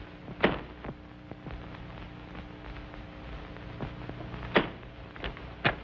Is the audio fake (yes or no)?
no